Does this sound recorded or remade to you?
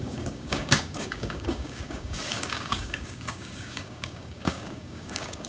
remade